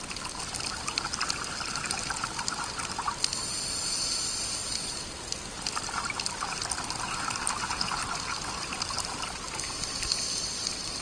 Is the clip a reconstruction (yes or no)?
no